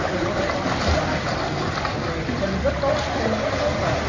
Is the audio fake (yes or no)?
no